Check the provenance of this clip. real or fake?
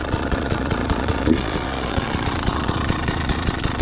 fake